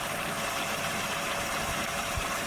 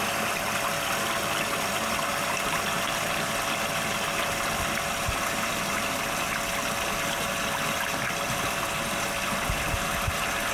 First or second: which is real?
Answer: second